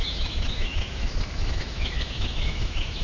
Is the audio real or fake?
fake